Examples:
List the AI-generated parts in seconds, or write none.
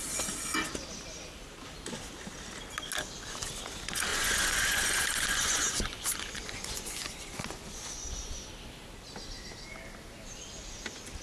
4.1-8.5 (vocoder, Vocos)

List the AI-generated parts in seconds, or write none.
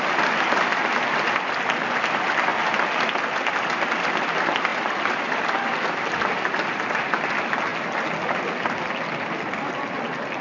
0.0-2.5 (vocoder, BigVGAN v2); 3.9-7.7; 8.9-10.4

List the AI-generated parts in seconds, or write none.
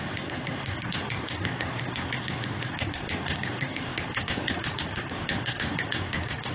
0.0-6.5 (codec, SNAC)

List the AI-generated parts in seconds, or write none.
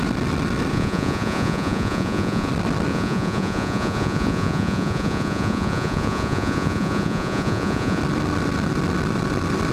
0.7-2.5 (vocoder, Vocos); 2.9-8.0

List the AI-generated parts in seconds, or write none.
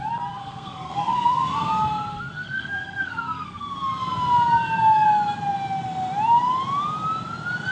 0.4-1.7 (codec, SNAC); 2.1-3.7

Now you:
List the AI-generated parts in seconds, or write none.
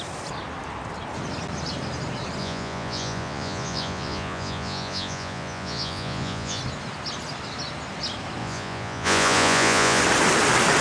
2.4-6.6 (vocoder, Vocos); 8.4-10.0